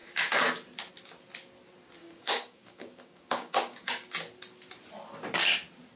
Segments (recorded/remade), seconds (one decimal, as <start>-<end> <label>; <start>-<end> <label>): 0.0-2.0 recorded; 2.0-3.9 remade; 3.9-6.0 recorded